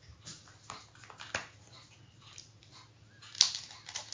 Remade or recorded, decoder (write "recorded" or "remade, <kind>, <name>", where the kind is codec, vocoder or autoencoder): recorded